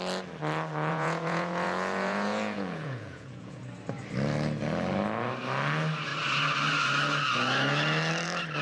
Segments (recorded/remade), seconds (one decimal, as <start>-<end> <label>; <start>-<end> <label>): 0.0-0.9 recorded; 0.9-3.6 remade; 3.6-8.6 recorded